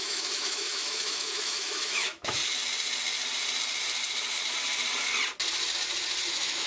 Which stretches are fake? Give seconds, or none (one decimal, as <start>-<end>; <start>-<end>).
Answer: 0.0-2.4; 6.3-6.7